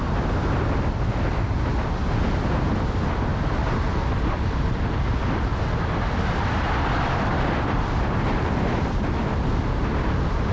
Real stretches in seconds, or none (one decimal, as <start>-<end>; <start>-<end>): 0.0-2.0; 2.5-5.5; 8.8-10.5